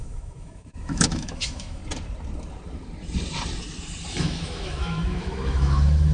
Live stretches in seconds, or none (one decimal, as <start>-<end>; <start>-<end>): 1.8-4.1